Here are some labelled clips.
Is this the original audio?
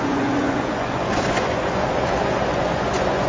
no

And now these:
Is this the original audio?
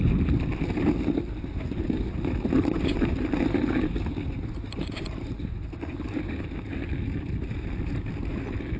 yes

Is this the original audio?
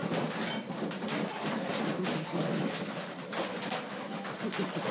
yes